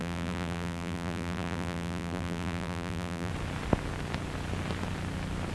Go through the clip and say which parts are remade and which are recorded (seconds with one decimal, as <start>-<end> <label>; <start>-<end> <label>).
0.0-3.3 remade; 3.3-5.5 recorded